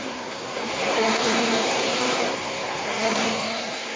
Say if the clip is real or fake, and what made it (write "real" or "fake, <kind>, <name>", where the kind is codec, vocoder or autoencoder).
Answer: fake, codec, SNAC